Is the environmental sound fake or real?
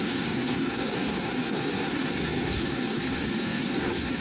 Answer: fake